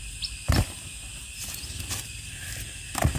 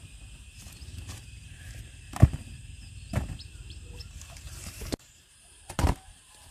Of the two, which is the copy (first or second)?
second